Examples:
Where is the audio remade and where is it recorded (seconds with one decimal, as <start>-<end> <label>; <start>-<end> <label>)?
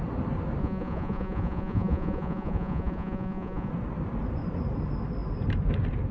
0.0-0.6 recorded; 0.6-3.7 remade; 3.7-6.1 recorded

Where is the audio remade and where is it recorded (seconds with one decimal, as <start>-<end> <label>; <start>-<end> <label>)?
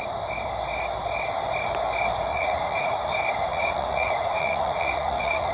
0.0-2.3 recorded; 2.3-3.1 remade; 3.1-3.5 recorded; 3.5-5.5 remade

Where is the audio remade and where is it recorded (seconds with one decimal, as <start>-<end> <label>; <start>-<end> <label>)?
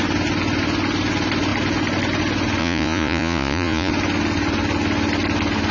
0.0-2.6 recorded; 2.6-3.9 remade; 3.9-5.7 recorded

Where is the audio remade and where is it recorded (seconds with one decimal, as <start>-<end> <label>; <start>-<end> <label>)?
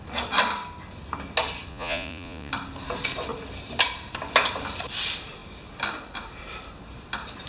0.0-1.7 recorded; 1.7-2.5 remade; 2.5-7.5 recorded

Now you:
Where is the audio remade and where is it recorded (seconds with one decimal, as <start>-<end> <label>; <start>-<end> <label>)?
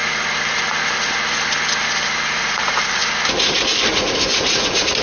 0.0-2.4 recorded; 2.4-3.0 remade; 3.0-3.9 recorded; 3.9-5.0 remade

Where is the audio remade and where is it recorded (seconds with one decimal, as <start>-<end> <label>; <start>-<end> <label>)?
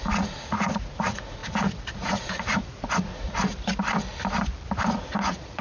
0.0-3.5 remade; 3.5-5.0 recorded; 5.0-5.6 remade